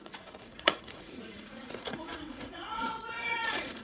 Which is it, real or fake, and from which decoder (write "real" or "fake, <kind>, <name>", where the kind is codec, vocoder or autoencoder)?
fake, vocoder, Vocos